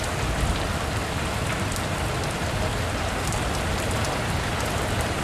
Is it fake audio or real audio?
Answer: real